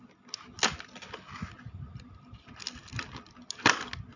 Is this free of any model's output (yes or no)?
yes